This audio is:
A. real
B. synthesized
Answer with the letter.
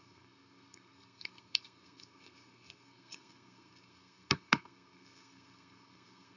B